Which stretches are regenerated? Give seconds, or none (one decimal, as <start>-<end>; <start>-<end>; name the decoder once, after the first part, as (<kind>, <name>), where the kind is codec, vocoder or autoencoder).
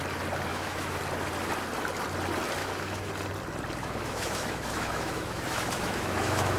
0.5-1.0 (autoencoder, DAC-VAE); 2.6-3.1; 3.8-6.6